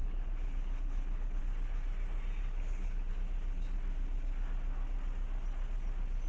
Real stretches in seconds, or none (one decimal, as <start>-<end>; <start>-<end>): 1.4-2.4; 3.1-6.3